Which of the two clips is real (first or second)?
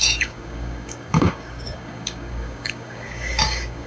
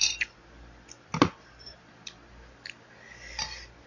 second